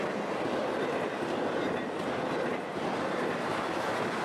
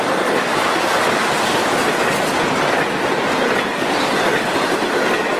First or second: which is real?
first